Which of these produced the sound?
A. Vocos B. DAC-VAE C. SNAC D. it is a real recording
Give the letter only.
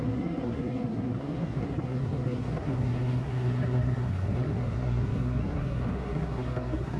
C